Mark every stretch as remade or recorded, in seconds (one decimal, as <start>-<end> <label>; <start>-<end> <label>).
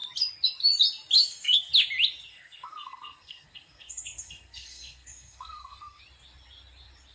0.0-1.2 recorded; 1.2-1.7 remade; 1.7-2.3 recorded; 2.3-6.0 remade; 6.0-7.1 recorded